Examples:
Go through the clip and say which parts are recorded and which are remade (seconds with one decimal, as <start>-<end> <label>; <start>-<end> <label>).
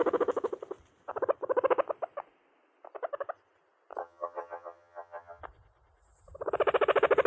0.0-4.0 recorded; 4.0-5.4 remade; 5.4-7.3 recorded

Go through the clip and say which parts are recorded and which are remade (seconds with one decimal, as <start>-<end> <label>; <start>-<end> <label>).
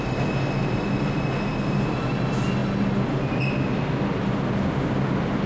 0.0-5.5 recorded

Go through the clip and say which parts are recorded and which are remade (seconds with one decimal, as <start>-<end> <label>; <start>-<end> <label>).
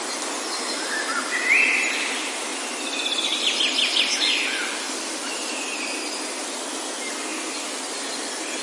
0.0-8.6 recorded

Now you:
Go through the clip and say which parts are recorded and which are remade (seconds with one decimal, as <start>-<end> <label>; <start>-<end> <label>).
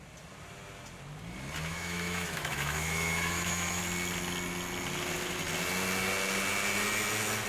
0.0-1.7 recorded; 1.7-3.8 remade; 3.8-7.5 recorded